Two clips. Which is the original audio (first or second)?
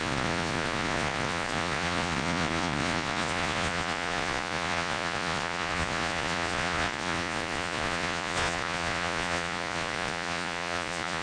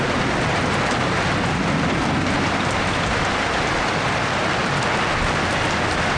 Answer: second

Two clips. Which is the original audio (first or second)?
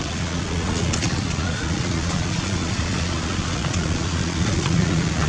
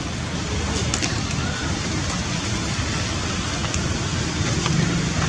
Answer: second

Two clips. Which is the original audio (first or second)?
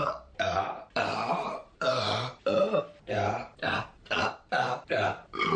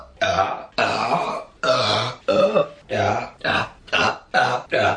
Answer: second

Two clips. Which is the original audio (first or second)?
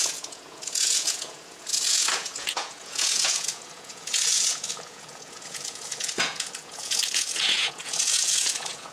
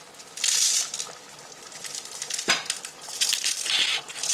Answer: second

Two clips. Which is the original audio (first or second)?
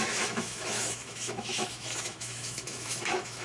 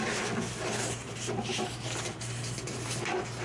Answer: second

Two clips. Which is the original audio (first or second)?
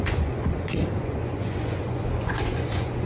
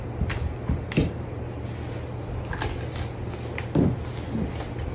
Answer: second